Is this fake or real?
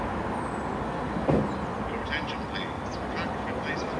real